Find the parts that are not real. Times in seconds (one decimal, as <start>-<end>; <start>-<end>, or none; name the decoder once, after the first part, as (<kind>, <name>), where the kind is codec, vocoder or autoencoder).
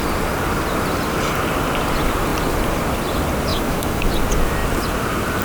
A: 3.5-4.1 (autoencoder, DAC-VAE)